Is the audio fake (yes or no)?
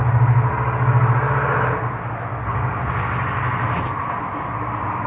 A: no